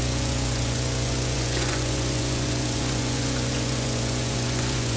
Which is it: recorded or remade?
remade